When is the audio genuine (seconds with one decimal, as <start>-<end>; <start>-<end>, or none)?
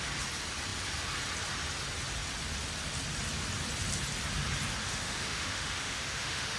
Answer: 0.0-4.9